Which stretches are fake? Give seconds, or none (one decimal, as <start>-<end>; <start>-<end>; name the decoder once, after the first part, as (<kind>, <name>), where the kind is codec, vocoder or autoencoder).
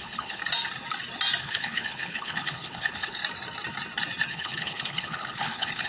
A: 0.0-0.4 (codec, HILCodec); 1.4-3.2; 4.3-5.9